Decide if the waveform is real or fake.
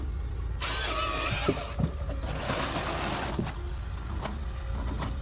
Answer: real